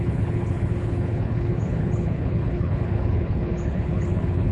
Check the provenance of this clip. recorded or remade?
remade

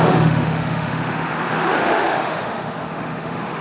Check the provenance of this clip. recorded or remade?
remade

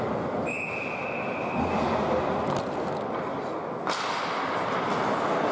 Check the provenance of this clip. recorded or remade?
recorded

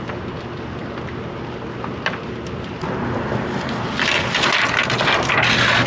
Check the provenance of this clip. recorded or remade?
recorded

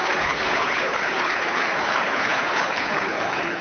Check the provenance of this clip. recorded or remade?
remade